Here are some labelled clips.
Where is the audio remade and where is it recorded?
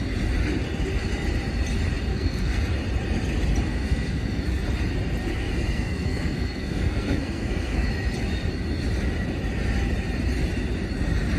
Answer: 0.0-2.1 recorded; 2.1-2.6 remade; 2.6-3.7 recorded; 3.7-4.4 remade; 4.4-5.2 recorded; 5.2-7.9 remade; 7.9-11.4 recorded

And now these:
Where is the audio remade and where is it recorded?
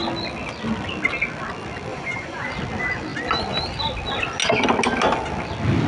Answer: 0.0-1.9 recorded; 1.9-2.5 remade; 2.5-5.9 recorded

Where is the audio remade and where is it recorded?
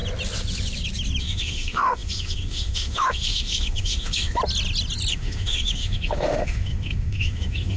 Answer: 0.0-1.2 recorded; 1.2-4.4 remade; 4.4-5.1 recorded; 5.1-7.8 remade